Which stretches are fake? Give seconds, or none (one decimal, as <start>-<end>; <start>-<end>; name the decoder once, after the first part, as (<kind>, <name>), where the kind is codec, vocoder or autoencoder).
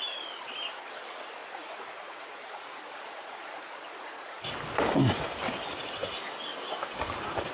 1.4-4.5 (vocoder, Vocos)